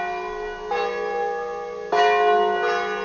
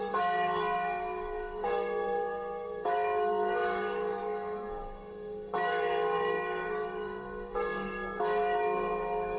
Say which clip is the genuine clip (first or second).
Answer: first